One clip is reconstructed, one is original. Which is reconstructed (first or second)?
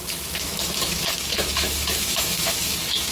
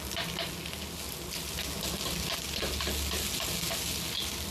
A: first